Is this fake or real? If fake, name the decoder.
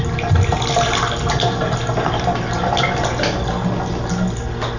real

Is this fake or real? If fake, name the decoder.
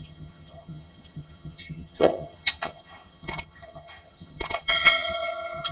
fake, vocoder, HiFi-GAN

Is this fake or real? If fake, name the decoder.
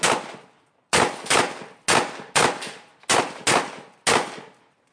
real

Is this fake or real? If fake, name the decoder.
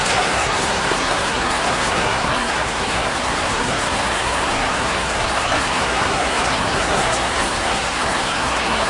fake, codec, SNAC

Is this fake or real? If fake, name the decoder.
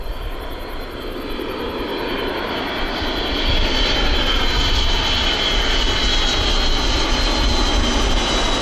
real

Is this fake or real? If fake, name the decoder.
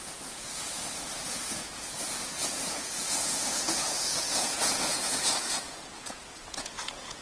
fake, vocoder, Vocos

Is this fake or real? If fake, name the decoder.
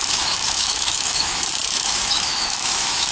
fake, autoencoder, DAC-VAE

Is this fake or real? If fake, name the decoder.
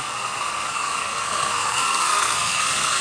fake, codec, SNAC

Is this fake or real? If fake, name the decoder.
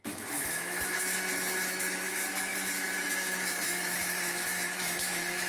fake, autoencoder, DAC-VAE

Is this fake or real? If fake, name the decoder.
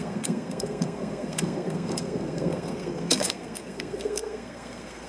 fake, codec, SNAC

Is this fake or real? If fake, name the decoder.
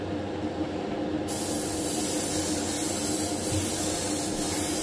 real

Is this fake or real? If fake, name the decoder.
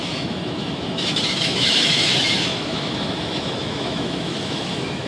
fake, autoencoder, DAC-VAE